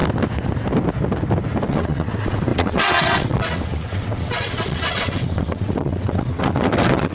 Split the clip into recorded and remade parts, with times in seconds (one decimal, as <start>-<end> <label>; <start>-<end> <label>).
0.0-1.7 recorded; 1.7-7.1 remade